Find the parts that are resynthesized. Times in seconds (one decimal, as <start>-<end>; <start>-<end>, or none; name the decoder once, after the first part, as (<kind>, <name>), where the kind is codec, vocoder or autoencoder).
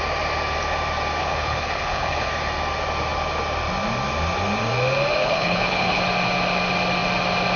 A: 1.2-2.3 (codec, HILCodec); 5.2-6.0